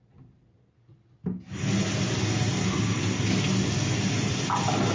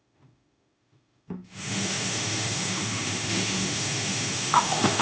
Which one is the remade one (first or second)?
second